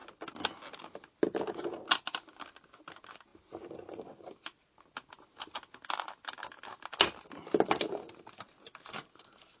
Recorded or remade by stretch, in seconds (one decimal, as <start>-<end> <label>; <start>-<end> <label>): 0.0-9.6 recorded